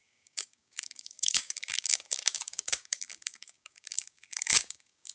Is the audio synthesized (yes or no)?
yes